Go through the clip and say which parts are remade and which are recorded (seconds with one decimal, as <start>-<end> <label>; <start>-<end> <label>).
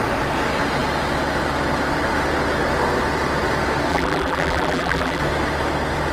0.0-3.9 recorded; 3.9-5.2 remade; 5.2-6.1 recorded